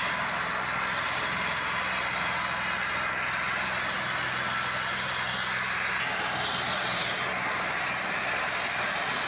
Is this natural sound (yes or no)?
yes